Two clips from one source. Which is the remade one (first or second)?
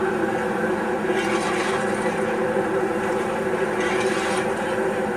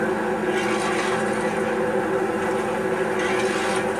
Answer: first